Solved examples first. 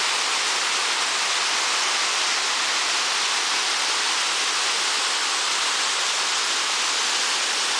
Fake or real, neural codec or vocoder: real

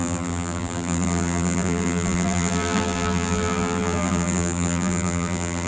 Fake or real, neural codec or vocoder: fake, vocoder, BigVGAN v2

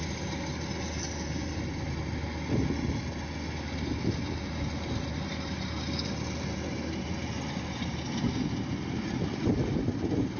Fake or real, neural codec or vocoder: real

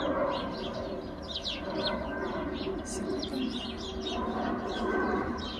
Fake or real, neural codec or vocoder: real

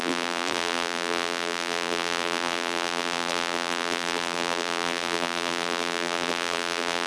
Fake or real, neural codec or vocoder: fake, vocoder, BigVGAN v2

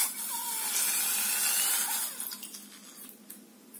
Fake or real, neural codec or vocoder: real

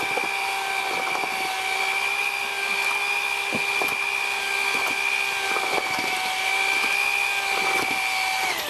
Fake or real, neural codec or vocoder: real